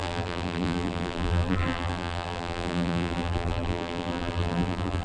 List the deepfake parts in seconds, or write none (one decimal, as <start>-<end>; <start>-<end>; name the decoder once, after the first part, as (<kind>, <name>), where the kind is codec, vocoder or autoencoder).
0.0-5.0 (vocoder, BigVGAN v2)